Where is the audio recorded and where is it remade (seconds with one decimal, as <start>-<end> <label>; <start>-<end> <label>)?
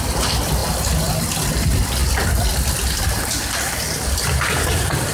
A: 0.0-5.1 recorded